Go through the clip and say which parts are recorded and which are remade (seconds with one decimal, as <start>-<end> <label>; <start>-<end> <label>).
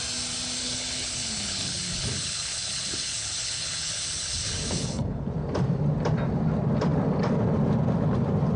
0.0-0.6 recorded; 0.6-5.3 remade; 5.3-8.6 recorded